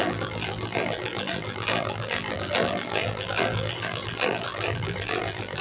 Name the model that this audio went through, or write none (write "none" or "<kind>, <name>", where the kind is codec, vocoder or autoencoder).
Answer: vocoder, BigVGAN v2